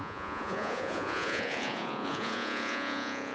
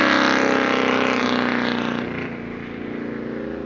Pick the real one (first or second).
second